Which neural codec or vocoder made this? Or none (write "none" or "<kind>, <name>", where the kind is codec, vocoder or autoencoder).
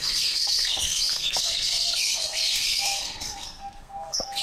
codec, SNAC